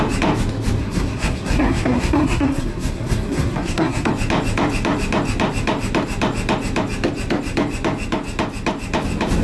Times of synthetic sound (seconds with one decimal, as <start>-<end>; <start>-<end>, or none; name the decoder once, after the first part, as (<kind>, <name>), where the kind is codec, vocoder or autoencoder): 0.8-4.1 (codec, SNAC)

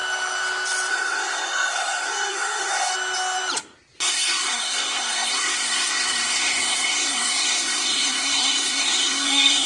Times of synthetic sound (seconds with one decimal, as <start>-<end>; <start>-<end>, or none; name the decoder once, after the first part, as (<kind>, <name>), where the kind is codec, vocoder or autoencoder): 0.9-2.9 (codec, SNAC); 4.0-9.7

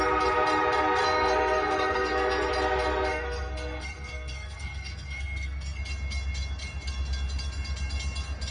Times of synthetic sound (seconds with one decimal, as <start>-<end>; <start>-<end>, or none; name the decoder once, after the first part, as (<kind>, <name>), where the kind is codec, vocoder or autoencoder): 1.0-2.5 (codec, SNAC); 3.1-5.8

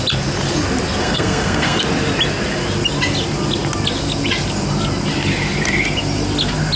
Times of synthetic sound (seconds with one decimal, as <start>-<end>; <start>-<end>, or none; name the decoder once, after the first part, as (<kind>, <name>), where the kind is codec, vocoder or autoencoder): 1.0-1.8 (codec, SNAC)